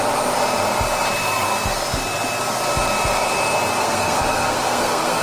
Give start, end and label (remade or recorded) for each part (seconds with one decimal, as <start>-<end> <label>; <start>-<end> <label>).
0.0-3.8 recorded; 3.8-5.2 remade